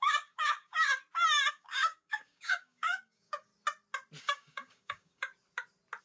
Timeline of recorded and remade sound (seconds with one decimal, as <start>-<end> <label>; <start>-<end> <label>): 0.0-0.9 remade; 0.9-1.5 recorded; 1.5-3.5 remade; 3.5-4.2 recorded; 4.2-5.3 remade; 5.3-6.0 recorded

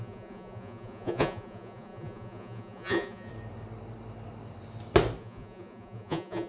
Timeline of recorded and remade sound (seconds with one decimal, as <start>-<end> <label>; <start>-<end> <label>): 0.0-3.3 remade; 3.3-5.2 recorded; 5.2-6.5 remade

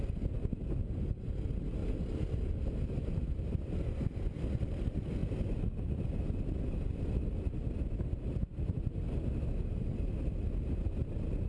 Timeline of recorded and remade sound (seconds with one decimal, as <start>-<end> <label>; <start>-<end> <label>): 0.0-11.5 recorded

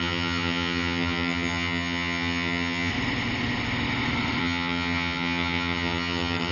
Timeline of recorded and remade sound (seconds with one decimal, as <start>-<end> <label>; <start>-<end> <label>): 0.0-2.9 remade; 2.9-4.4 recorded; 4.4-6.5 remade

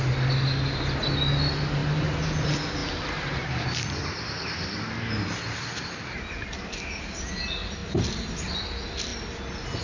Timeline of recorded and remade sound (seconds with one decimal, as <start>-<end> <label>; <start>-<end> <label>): 0.0-1.8 recorded; 1.8-2.3 remade; 2.3-2.8 recorded; 2.8-3.8 remade; 3.8-9.8 recorded